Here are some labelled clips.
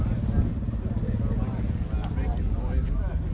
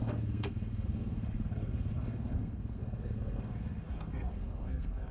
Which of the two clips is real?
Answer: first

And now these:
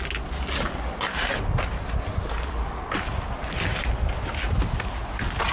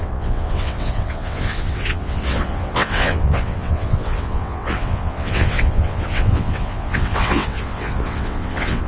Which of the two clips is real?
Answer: first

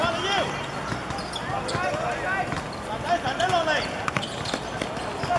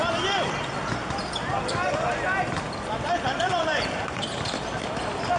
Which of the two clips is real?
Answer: first